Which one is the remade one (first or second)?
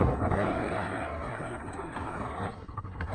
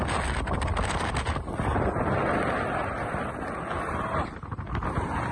first